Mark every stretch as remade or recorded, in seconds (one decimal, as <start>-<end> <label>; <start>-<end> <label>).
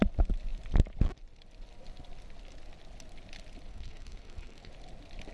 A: 0.0-3.7 recorded; 3.7-4.7 remade; 4.7-5.3 recorded